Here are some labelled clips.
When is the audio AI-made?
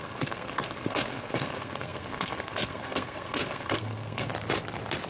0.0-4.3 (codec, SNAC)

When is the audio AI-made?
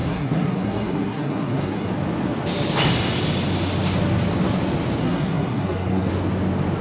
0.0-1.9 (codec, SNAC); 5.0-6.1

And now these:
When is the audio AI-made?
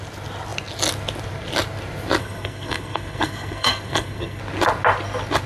2.2-4.4 (codec, SNAC)